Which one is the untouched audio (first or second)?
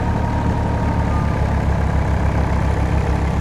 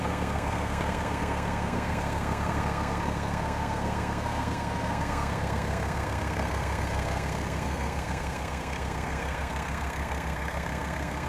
first